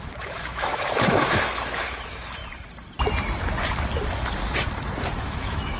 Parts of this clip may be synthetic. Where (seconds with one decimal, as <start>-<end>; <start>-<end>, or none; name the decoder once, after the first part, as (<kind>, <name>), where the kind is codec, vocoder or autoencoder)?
0.0-2.4 (autoencoder, DAC-VAE); 5.2-5.8